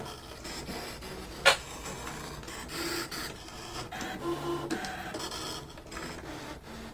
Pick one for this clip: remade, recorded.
recorded